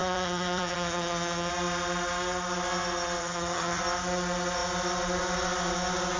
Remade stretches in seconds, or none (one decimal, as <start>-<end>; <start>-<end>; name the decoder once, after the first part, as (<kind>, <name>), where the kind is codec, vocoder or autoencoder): 0.0-1.5 (vocoder, HiFi-GAN); 3.2-3.8